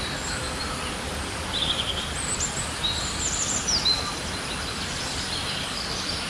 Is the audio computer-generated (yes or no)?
yes